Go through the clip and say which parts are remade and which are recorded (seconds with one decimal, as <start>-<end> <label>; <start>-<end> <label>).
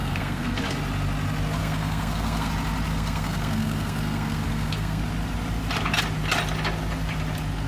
0.0-0.6 remade; 0.6-1.6 recorded; 1.6-2.5 remade; 2.5-2.9 recorded; 2.9-5.0 remade; 5.0-7.7 recorded